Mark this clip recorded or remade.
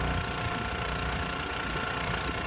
recorded